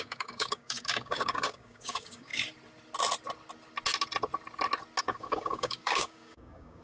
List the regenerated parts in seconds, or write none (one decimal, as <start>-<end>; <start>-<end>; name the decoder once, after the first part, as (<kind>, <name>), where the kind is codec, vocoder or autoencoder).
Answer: 0.0-2.3 (codec, DAC); 5.0-6.8